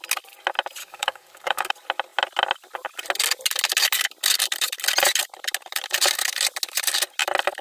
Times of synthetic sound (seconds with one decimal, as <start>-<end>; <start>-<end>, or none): 0.8-1.7